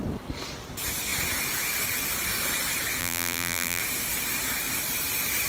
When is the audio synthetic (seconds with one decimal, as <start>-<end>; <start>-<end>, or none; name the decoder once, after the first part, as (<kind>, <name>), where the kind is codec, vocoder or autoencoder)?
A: 3.0-3.8 (vocoder, BigVGAN v2)